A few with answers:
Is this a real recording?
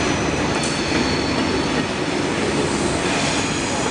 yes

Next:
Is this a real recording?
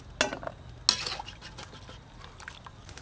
yes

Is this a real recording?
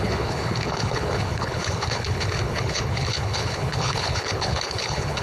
no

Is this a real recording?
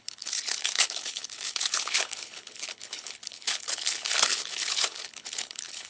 no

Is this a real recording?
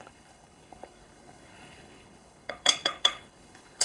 no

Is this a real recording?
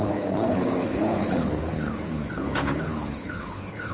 no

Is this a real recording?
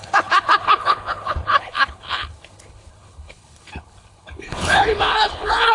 no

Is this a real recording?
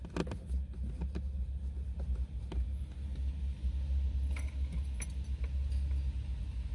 yes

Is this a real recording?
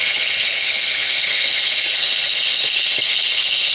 no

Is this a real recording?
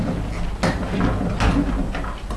yes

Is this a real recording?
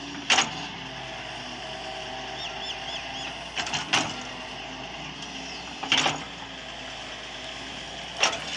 yes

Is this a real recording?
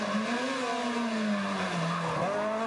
yes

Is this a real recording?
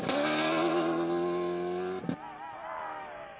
yes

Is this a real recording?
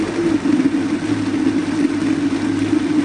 yes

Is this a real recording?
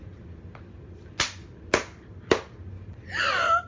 yes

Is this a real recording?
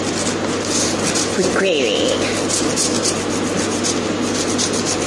yes